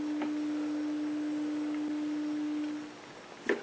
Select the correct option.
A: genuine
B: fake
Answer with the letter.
A